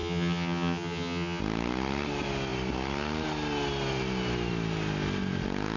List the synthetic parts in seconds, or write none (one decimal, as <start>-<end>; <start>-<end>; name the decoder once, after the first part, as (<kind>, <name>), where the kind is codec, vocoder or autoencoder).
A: 0.0-1.4 (vocoder, HiFi-GAN)